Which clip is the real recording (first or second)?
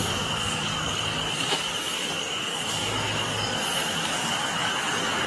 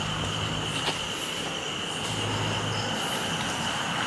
second